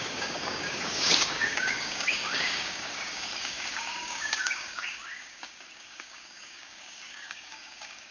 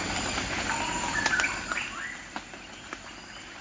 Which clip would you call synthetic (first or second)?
first